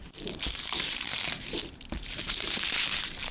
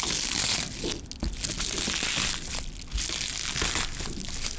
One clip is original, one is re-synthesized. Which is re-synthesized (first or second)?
first